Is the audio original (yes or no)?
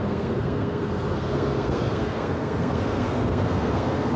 no